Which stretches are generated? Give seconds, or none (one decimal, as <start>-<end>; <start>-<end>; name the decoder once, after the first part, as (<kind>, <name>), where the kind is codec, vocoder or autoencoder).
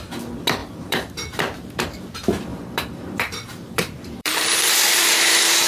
0.6-1.8 (vocoder, BigVGAN v2); 2.5-5.7